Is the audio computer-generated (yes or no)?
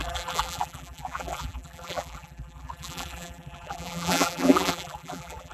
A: yes